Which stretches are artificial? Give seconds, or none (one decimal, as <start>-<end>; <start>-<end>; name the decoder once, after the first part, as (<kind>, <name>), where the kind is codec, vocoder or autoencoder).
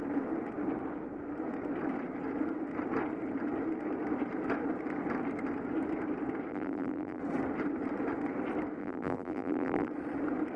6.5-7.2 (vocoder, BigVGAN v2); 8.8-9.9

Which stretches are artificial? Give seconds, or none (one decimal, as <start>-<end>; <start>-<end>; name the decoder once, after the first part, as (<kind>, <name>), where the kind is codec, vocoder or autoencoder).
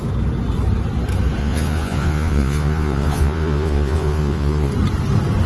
1.4-4.7 (vocoder, Vocos)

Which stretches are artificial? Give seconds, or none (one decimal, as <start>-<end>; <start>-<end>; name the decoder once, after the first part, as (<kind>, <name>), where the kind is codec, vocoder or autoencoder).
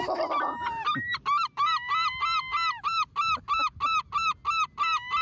none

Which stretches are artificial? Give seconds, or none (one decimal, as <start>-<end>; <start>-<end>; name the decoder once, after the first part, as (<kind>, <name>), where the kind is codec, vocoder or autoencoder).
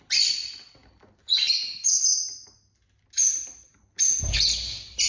none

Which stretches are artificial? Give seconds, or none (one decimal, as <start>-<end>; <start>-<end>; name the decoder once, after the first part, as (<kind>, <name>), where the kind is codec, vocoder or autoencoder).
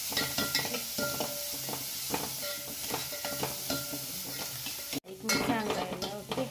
0.0-1.2 (vocoder, BigVGAN v2)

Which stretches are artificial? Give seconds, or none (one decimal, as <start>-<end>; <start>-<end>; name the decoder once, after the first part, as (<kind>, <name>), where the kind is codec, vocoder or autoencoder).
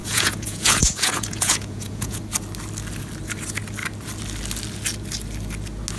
0.0-2.2 (vocoder, Vocos)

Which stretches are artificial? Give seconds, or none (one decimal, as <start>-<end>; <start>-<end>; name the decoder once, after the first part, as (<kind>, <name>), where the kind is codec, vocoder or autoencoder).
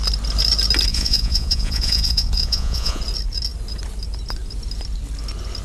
0.9-3.0 (vocoder, Vocos)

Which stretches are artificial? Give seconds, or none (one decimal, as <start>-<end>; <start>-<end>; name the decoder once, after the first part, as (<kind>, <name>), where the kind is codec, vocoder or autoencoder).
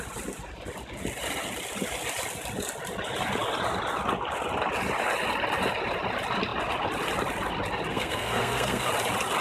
7.9-8.9 (codec, SNAC)